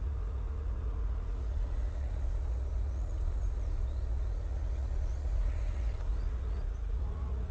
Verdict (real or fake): fake